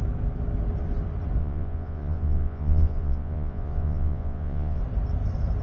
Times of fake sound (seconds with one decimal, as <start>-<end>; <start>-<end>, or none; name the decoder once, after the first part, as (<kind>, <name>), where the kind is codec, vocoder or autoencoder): 1.4-4.8 (vocoder, Vocos)